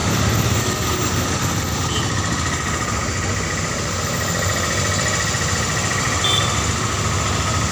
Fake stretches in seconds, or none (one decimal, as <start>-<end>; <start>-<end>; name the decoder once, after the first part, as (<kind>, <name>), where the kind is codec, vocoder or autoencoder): none